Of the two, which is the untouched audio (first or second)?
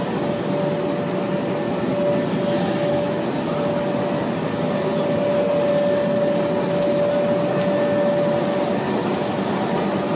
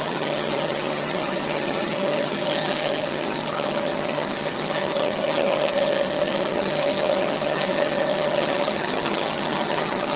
first